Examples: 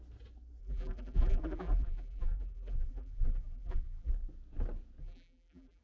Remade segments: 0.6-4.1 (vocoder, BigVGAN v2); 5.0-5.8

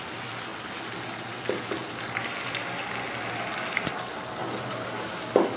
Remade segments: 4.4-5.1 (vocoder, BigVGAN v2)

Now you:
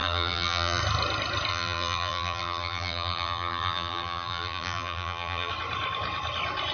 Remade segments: 0.0-0.8 (vocoder, BigVGAN v2); 1.5-5.5

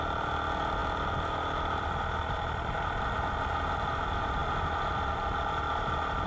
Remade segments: none